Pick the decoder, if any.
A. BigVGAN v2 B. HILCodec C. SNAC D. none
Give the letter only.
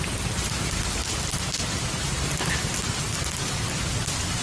D